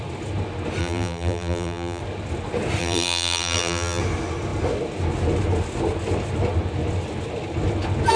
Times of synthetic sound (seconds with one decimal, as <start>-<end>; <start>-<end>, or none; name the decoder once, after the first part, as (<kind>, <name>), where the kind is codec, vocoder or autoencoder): 0.8-2.0 (vocoder, BigVGAN v2); 2.8-4.0